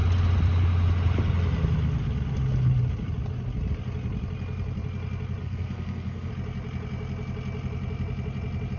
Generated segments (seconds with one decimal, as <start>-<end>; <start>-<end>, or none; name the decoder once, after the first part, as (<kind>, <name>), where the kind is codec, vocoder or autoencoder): 5.4-6.3 (codec, SNAC)